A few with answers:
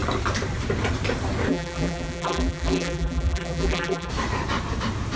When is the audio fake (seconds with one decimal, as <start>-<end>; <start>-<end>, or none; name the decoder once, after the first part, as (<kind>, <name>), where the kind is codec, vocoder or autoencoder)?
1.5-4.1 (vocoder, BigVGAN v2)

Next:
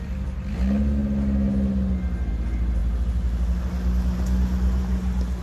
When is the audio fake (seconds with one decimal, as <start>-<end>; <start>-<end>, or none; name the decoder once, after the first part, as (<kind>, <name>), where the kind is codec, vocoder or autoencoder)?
none

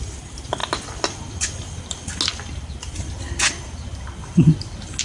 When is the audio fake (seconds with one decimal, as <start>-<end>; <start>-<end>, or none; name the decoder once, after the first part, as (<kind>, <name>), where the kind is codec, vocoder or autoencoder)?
none

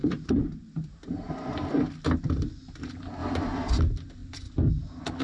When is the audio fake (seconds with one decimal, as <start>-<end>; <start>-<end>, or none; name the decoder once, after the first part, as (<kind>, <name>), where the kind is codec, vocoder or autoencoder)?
0.0-2.0 (vocoder, BigVGAN v2)

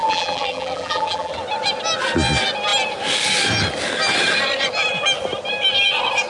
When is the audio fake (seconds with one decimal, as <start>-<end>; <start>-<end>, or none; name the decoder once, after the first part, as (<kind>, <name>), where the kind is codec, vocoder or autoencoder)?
0.0-1.3 (vocoder, BigVGAN v2)

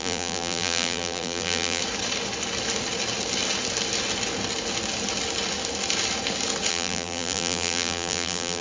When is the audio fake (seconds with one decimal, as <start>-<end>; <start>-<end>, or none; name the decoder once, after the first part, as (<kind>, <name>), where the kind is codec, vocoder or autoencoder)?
0.0-1.8 (vocoder, BigVGAN v2); 6.7-8.6